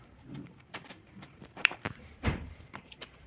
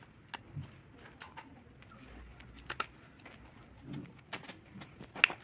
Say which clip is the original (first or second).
second